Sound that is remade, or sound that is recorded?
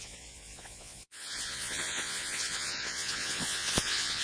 remade